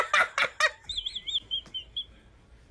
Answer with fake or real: real